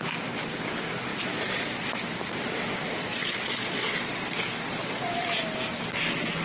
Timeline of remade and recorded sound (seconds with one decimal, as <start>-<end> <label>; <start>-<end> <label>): 0.0-1.1 recorded; 1.1-2.0 remade; 2.0-3.1 recorded; 3.1-4.2 remade; 4.2-4.8 recorded; 4.8-5.4 remade; 5.4-6.4 recorded